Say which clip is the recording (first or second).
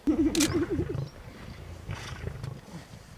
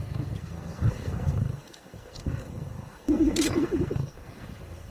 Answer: first